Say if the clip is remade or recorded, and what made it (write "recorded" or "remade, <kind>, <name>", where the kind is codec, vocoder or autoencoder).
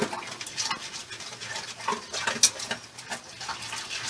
recorded